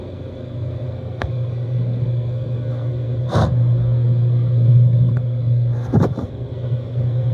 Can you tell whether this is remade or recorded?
remade